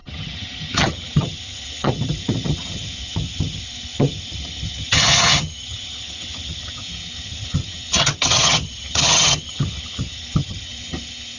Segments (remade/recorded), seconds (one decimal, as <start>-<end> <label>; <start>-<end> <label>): 0.0-11.4 remade